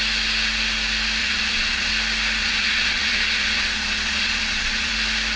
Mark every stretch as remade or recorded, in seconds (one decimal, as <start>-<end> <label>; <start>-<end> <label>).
0.0-1.2 recorded; 1.2-1.9 remade; 1.9-2.4 recorded; 2.4-4.9 remade; 4.9-5.4 recorded